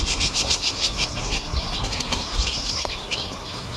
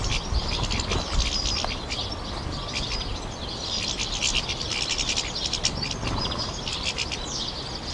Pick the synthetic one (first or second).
first